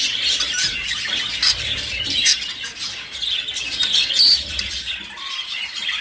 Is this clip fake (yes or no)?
no